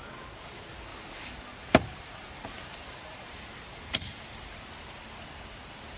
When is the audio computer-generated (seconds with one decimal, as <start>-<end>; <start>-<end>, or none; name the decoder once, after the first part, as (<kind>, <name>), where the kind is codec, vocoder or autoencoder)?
0.9-4.5 (vocoder, BigVGAN v2)